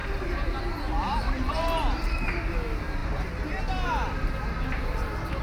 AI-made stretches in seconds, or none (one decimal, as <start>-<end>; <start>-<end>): 0.0-0.6; 1.2-2.5